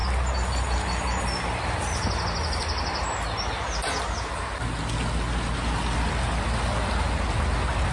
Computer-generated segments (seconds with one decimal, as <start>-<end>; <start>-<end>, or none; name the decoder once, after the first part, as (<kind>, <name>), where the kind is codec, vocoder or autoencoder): none